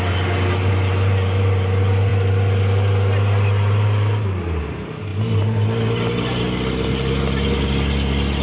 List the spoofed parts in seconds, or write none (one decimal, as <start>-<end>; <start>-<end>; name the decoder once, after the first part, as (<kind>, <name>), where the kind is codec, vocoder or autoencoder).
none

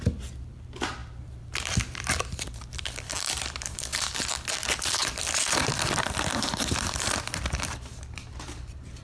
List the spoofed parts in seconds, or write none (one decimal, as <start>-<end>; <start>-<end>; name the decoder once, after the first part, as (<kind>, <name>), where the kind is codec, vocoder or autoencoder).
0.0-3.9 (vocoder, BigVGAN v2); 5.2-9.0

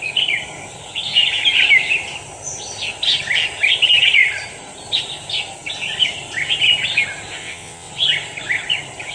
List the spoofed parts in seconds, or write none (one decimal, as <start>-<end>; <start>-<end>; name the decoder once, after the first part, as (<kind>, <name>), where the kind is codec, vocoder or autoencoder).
7.4-7.9 (vocoder, WaveNeXt)